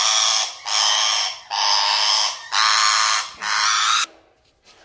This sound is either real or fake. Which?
real